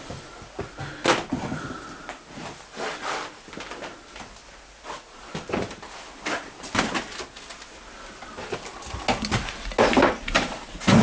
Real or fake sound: real